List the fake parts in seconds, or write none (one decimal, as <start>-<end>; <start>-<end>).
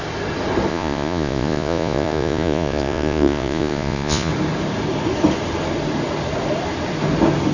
0.7-4.3